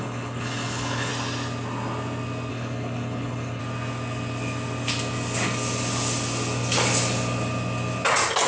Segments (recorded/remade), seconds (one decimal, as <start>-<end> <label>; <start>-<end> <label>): 0.0-1.1 remade; 1.1-2.5 recorded; 2.5-3.6 remade; 3.6-8.5 recorded